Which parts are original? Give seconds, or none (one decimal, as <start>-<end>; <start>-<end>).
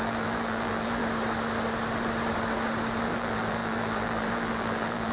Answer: 1.0-3.0